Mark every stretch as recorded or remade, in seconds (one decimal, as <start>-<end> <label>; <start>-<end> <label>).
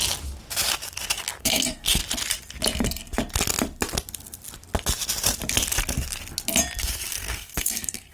0.0-1.4 recorded; 1.4-2.0 remade; 2.0-6.8 recorded; 6.8-8.1 remade